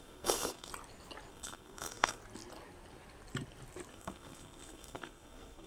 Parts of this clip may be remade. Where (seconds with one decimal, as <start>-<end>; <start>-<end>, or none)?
0.0-0.7; 1.3-2.2; 3.9-5.7